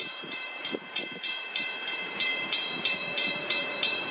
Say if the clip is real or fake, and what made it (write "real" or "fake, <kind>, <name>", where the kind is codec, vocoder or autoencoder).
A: fake, vocoder, Vocos